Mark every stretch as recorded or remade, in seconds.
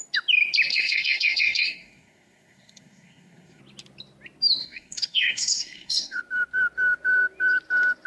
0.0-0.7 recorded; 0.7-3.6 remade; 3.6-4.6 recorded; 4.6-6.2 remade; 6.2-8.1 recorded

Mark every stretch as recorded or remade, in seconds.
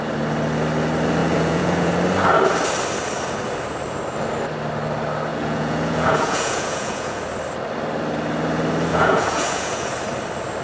0.0-1.2 recorded; 1.2-1.9 remade; 1.9-5.3 recorded; 5.3-7.2 remade; 7.2-8.9 recorded; 8.9-9.9 remade; 9.9-10.6 recorded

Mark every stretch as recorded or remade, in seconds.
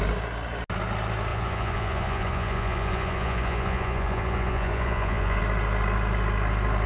0.0-1.3 recorded; 1.3-5.4 remade; 5.4-6.9 recorded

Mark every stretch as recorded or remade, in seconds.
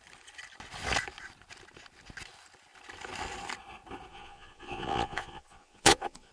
0.0-4.1 recorded; 4.1-6.3 remade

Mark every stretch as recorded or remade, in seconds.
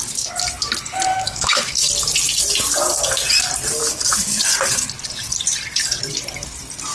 0.0-1.1 recorded; 1.1-1.9 remade; 1.9-3.8 recorded; 3.8-4.4 remade; 4.4-6.9 recorded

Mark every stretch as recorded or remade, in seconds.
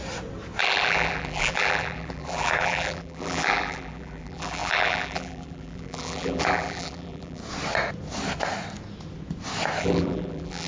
0.0-0.6 recorded; 0.6-7.4 remade; 7.4-9.8 recorded; 9.8-10.7 remade